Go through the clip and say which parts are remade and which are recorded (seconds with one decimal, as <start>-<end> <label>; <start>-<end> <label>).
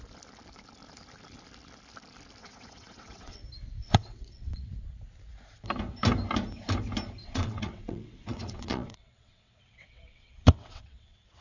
0.0-2.4 recorded; 2.4-3.4 remade; 3.4-3.8 recorded; 3.8-4.7 remade; 4.7-7.2 recorded; 7.2-11.4 remade